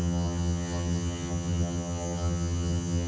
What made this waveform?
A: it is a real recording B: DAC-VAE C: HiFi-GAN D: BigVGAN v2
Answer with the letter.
C